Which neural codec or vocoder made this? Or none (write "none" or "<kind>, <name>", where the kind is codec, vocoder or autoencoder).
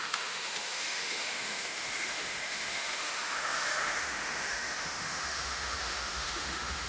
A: autoencoder, DAC-VAE